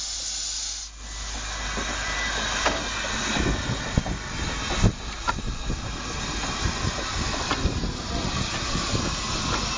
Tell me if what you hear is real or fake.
real